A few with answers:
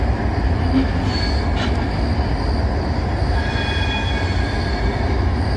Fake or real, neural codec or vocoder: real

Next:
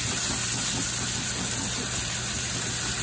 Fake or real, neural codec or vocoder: real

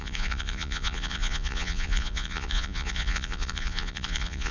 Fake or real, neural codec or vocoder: fake, vocoder, Vocos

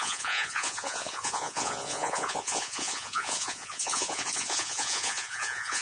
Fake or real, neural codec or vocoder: fake, vocoder, Vocos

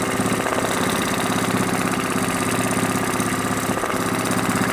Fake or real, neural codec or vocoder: real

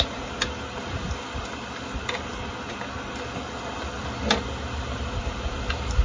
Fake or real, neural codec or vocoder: real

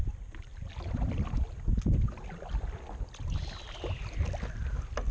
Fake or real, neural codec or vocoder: real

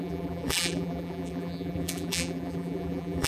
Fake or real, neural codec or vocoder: fake, vocoder, BigVGAN v2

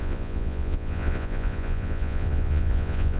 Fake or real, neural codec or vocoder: fake, vocoder, Vocos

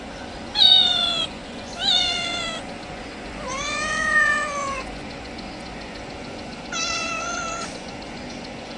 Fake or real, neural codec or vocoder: fake, vocoder, Vocos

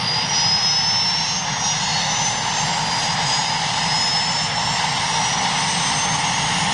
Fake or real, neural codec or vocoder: real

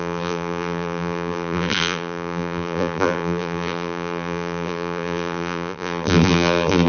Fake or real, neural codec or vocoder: fake, vocoder, BigVGAN v2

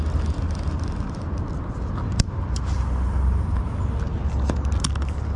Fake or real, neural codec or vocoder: real